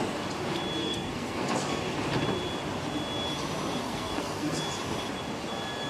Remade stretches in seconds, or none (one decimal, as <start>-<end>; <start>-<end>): 0.8-1.8; 3.8-4.6